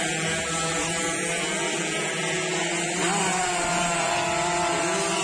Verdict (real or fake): real